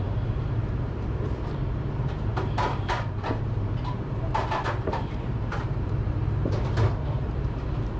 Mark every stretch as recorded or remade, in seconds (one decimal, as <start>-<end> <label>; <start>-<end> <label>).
0.0-8.0 remade

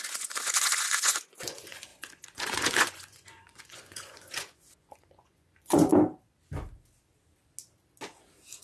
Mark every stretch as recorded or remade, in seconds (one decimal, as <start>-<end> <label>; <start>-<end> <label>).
0.0-5.9 remade; 5.9-8.6 recorded

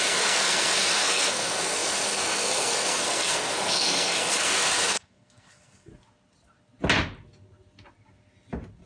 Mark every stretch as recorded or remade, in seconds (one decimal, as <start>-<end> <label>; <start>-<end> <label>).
0.0-5.9 remade; 5.9-8.9 recorded

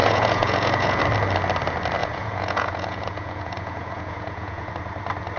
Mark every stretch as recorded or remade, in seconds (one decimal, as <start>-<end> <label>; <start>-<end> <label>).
0.0-1.0 remade; 1.0-2.0 recorded; 2.0-4.7 remade; 4.7-5.4 recorded

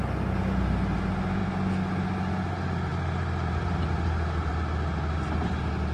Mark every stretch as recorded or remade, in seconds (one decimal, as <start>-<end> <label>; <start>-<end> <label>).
0.0-2.9 recorded; 2.9-3.7 remade; 3.7-5.9 recorded

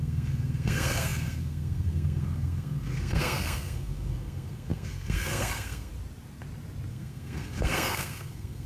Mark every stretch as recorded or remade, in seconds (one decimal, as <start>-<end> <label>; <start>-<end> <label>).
0.0-5.9 remade; 5.9-6.9 recorded; 6.9-8.7 remade

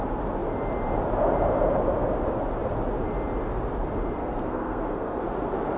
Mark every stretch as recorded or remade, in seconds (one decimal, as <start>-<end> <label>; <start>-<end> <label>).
0.0-4.2 recorded; 4.2-5.2 remade; 5.2-5.8 recorded

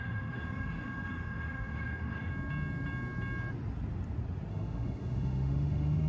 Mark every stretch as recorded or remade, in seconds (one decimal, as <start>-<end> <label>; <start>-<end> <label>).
0.0-2.3 remade; 2.3-4.5 recorded; 4.5-6.1 remade